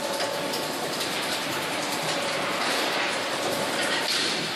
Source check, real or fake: fake